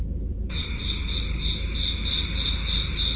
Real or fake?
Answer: real